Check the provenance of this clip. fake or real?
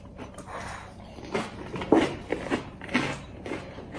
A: real